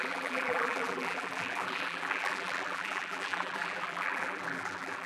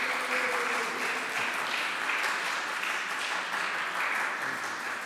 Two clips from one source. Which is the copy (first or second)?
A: first